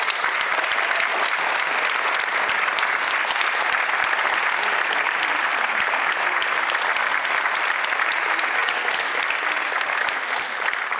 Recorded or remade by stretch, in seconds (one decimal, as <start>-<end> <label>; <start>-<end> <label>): 0.0-8.6 recorded; 8.6-9.2 remade; 9.2-11.0 recorded